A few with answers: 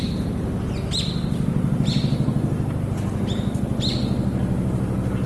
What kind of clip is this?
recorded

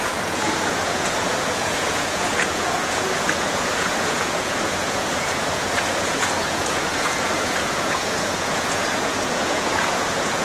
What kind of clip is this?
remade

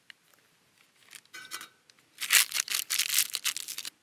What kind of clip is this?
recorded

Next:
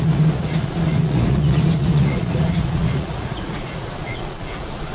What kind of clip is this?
remade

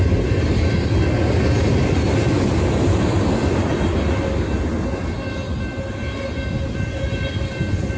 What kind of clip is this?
recorded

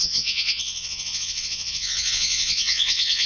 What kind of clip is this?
remade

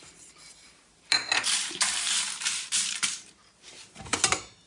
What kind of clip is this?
remade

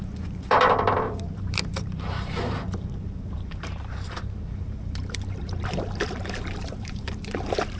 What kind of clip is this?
remade